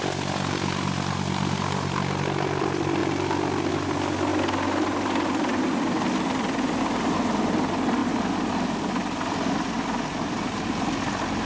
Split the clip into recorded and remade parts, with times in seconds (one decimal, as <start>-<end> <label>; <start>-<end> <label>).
0.0-11.5 recorded